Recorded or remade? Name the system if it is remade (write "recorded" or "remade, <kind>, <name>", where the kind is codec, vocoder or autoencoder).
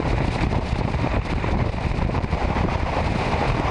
remade, vocoder, BigVGAN v2